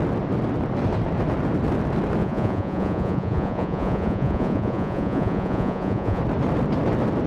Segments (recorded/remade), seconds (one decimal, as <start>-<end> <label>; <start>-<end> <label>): 0.0-2.2 recorded; 2.2-6.2 remade; 6.2-7.3 recorded